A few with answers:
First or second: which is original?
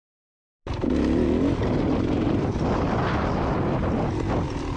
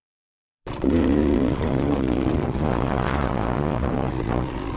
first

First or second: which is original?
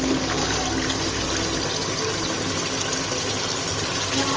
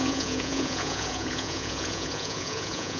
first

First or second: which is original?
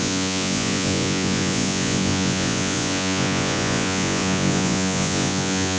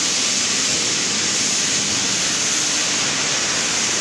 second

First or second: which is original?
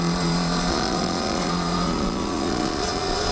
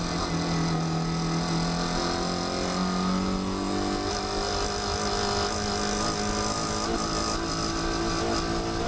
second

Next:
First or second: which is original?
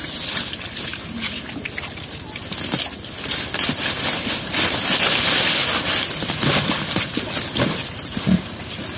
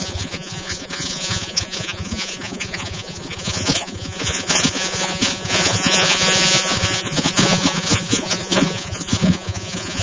first